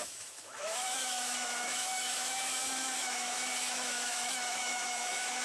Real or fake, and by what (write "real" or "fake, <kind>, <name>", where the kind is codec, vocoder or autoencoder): fake, autoencoder, DAC-VAE